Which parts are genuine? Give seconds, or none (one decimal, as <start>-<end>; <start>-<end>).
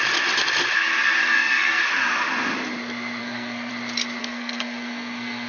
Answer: 0.0-1.2; 1.8-3.2; 3.7-4.2